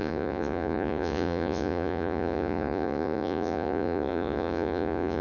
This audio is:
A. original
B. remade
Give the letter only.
B